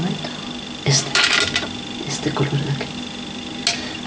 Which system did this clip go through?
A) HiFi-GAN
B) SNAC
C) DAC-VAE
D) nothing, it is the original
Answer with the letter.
D